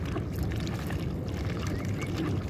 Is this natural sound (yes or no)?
yes